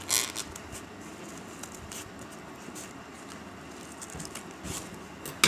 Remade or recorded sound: recorded